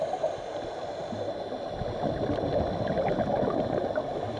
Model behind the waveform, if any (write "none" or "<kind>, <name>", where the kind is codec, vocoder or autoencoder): none